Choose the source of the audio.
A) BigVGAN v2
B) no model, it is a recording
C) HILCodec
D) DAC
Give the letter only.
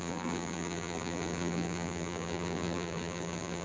A